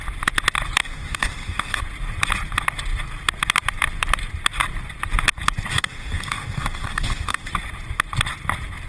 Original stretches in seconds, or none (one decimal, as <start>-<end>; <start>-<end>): 0.0-0.8; 1.8-5.7; 7.5-8.9